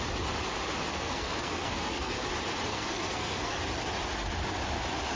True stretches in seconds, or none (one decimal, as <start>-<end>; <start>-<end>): 0.0-0.9; 2.3-2.7; 3.6-5.2